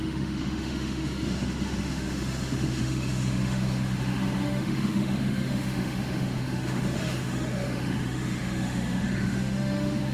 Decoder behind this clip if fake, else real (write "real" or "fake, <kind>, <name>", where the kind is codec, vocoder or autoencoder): fake, autoencoder, DAC-VAE